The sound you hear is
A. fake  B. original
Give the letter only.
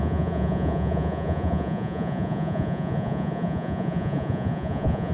A